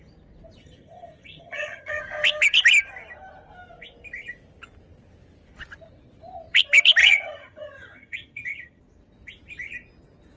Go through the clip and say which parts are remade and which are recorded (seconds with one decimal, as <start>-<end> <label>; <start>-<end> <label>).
0.0-0.6 recorded; 0.6-2.0 remade; 2.0-7.0 recorded; 7.0-8.8 remade; 8.8-10.4 recorded